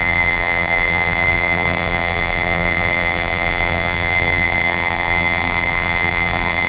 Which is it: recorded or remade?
remade